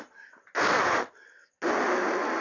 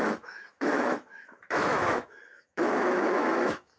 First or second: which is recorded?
first